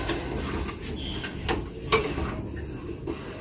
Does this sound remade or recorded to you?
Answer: recorded